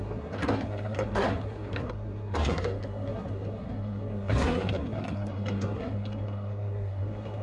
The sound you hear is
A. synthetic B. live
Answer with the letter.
A